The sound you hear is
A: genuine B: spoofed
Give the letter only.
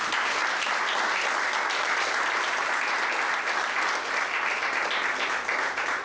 A